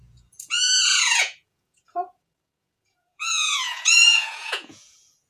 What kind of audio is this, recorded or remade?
remade